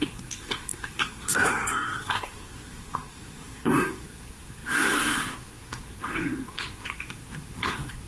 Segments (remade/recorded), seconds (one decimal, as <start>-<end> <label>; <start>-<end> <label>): 0.0-8.1 remade